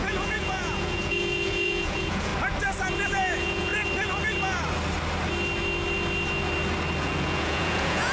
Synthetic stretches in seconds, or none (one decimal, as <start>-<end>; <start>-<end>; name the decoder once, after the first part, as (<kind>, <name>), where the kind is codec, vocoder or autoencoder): 0.0-2.3 (vocoder, Vocos); 3.1-3.7; 7.0-8.1